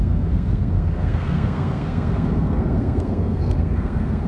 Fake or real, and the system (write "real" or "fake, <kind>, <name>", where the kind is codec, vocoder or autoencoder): fake, codec, SNAC